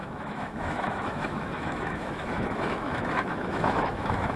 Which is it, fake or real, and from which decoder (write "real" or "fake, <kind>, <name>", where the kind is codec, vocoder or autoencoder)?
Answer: fake, autoencoder, DAC-VAE